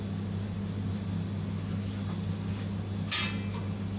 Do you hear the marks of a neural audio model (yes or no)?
no